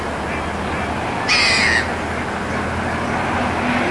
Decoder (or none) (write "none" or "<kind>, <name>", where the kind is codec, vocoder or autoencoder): none